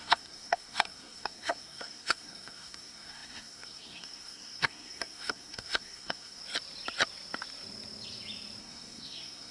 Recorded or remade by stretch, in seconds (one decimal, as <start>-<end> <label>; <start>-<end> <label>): 0.0-6.4 remade; 6.4-8.6 recorded; 8.6-9.5 remade